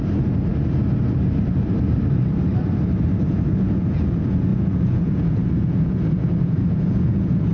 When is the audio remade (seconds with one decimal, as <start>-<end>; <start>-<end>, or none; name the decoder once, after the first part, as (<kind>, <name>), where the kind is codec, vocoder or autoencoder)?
3.2-7.5 (vocoder, Vocos)